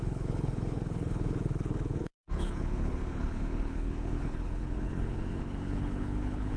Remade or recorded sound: remade